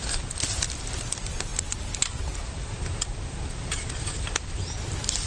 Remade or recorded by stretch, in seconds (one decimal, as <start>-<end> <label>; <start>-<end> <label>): 0.0-5.3 recorded